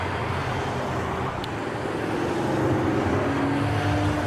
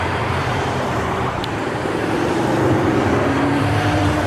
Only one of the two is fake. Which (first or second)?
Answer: second